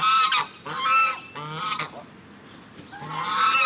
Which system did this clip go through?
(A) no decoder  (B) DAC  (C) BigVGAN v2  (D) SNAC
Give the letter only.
A